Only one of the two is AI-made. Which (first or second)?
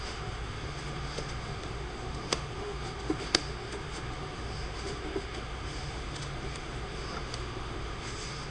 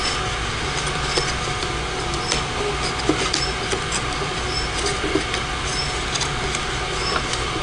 first